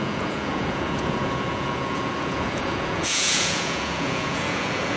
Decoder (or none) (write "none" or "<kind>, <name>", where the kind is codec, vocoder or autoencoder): vocoder, Vocos